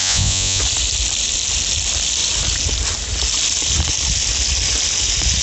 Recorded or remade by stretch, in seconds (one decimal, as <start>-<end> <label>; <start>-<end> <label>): 0.0-0.6 remade; 0.6-5.4 recorded